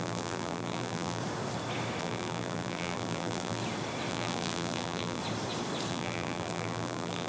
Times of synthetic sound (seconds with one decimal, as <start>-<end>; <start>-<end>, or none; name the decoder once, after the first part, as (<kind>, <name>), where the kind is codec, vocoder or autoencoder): 0.0-1.2 (vocoder, BigVGAN v2); 2.0-3.6; 4.1-5.2; 5.9-7.3